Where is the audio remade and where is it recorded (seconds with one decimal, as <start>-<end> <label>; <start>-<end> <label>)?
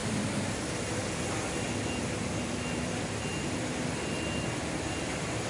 0.0-5.5 recorded